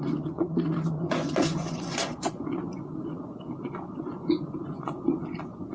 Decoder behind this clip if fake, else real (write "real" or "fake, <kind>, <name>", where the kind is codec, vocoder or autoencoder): fake, vocoder, Vocos